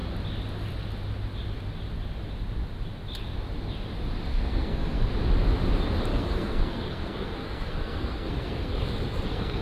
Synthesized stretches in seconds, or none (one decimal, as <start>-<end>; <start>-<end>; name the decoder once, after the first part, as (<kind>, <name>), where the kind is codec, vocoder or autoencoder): 4.3-5.1 (codec, SNAC); 6.1-9.6